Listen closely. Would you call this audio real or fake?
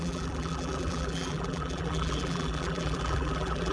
fake